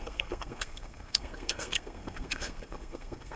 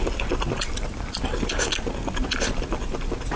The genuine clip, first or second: second